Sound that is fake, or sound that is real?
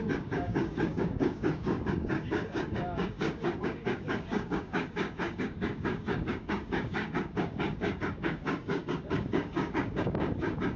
fake